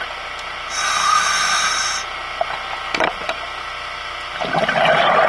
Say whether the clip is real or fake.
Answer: real